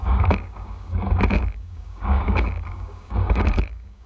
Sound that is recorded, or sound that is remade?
remade